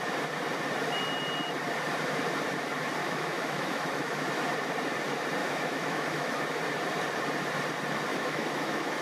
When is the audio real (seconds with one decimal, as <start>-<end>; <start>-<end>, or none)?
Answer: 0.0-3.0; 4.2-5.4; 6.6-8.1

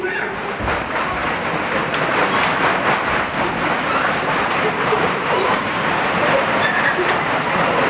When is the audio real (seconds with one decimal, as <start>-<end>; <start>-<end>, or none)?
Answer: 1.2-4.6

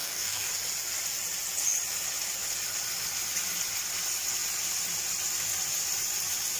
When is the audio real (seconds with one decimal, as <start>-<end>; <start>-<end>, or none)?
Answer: 0.5-6.6

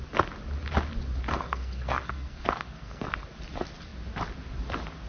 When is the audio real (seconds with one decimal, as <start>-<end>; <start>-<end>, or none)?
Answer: 0.0-1.3; 3.1-5.1